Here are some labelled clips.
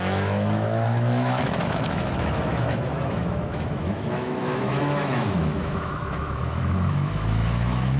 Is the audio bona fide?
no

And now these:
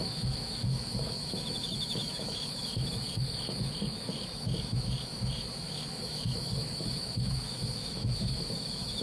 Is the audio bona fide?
no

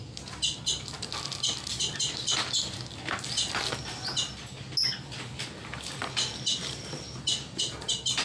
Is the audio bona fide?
yes